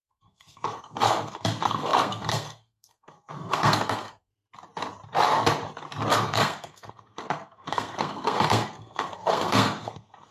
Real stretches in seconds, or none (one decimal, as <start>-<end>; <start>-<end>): 4.3-6.1